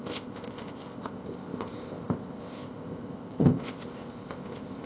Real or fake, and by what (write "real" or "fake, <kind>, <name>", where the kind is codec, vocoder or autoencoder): fake, codec, ZipCodec